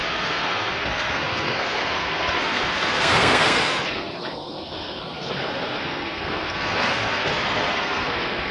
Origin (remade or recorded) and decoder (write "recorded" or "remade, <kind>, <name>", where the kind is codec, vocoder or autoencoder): remade, codec, SNAC